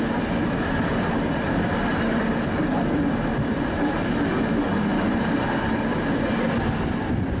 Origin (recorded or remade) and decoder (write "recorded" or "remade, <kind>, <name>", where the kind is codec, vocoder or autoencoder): recorded